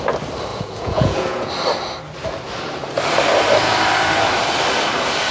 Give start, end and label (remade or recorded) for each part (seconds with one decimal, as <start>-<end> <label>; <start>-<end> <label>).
0.0-0.5 recorded; 0.5-1.5 remade; 1.5-5.3 recorded